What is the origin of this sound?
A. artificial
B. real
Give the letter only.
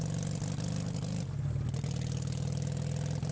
B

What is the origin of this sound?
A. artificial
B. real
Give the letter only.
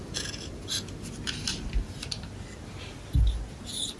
B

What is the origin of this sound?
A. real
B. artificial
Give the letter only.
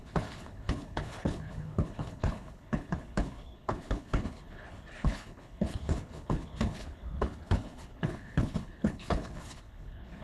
B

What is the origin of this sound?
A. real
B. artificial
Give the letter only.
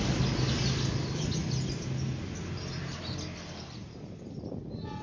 A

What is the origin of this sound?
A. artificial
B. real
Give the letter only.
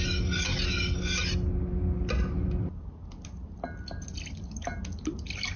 B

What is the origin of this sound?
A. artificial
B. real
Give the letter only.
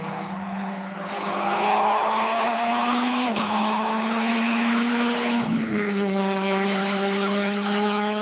A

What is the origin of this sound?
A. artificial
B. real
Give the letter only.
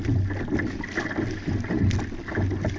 B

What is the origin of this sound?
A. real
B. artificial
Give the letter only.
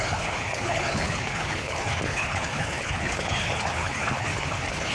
B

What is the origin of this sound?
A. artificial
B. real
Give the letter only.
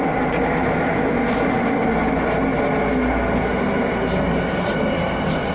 B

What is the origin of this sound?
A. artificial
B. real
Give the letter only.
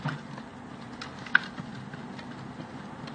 B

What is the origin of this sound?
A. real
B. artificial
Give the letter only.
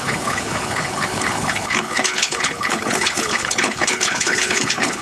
B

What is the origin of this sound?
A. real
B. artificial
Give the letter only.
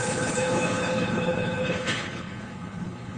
B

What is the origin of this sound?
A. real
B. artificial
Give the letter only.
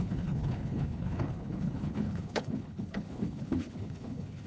B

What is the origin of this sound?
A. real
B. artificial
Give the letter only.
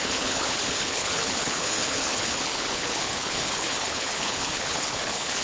B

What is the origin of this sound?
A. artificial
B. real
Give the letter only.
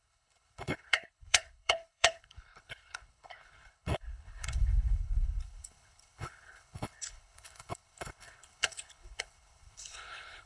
A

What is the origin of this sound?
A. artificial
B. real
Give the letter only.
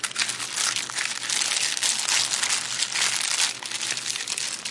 B